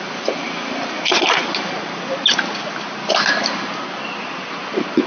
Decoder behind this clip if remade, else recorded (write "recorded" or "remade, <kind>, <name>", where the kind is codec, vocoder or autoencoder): recorded